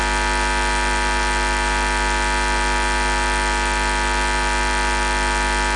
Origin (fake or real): real